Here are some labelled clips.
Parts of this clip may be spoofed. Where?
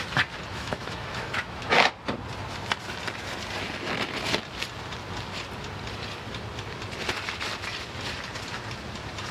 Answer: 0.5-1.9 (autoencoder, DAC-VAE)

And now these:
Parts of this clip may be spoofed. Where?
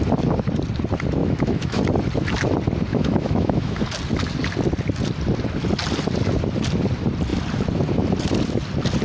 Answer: 1.2-1.8 (autoencoder, DAC-VAE); 2.9-3.8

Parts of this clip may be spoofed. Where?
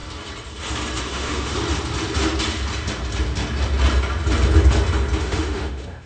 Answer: 1.0-1.5 (autoencoder, DAC-VAE); 5.2-6.1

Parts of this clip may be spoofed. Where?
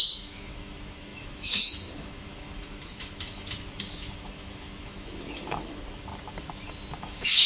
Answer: 0.0-6.1 (autoencoder, DAC-VAE); 7.0-7.5